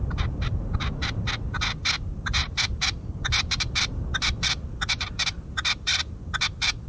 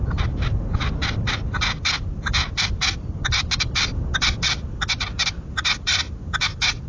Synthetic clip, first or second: first